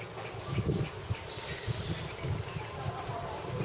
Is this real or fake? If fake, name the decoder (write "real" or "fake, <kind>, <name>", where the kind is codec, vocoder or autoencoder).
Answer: real